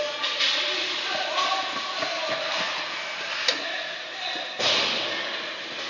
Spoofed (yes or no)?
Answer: no